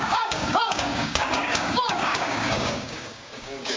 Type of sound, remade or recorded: remade